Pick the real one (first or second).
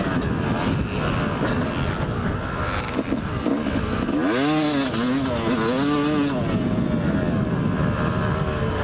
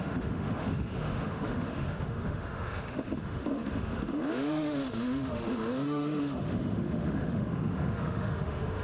first